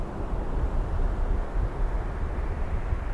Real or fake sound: real